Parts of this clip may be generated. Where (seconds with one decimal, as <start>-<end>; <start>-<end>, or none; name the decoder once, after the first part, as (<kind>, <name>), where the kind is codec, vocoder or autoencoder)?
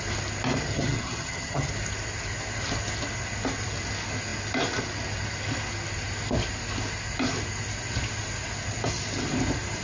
0.7-1.7 (vocoder, HiFi-GAN)